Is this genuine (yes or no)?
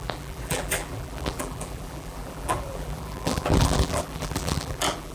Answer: no